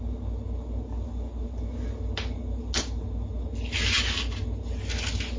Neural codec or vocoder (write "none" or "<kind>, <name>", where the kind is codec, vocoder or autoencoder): none